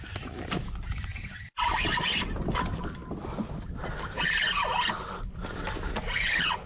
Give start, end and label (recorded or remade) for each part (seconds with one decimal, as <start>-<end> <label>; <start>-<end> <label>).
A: 0.0-6.7 recorded